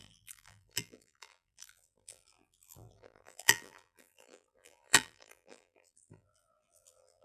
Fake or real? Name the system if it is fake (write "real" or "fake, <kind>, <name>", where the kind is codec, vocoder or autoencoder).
fake, vocoder, BigVGAN v2